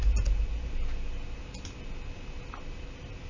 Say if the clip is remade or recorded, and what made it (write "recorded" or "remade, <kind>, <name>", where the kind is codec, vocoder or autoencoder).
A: recorded